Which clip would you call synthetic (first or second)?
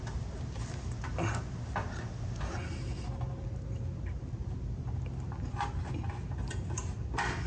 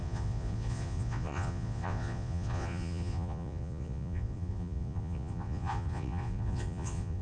second